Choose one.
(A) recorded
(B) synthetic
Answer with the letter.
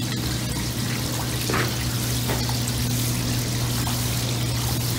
A